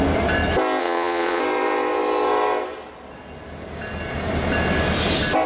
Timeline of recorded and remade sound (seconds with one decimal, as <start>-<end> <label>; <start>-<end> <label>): 0.0-0.8 recorded; 0.8-1.4 remade; 1.4-5.5 recorded